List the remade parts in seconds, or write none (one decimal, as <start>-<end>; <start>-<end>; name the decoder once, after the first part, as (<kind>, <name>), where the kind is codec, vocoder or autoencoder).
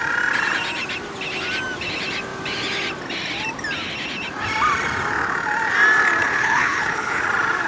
6.2-7.2 (codec, HILCodec)